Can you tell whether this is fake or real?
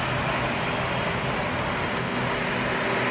real